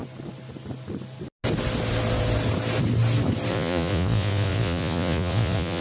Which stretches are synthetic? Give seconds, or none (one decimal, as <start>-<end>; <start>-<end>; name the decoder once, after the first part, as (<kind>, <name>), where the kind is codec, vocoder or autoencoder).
3.5-5.8 (vocoder, Vocos)